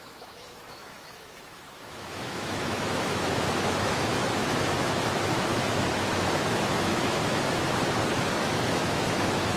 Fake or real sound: fake